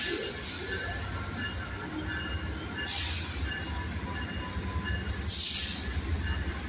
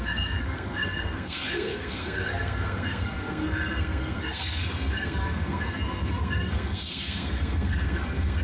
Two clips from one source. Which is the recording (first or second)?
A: first